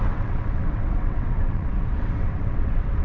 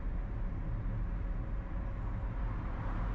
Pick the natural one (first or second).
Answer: second